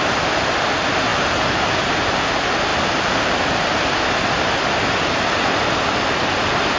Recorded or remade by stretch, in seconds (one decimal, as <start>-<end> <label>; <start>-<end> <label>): 0.0-6.8 recorded